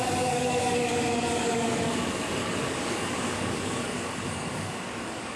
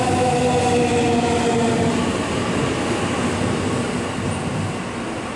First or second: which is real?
second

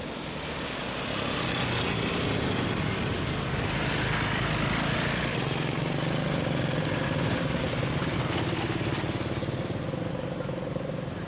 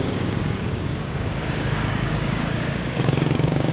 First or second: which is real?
first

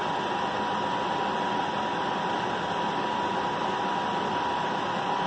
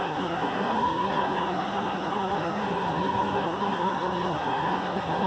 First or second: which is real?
first